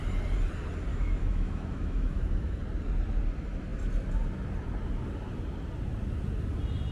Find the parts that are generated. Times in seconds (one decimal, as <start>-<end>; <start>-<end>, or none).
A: 0.9-2.6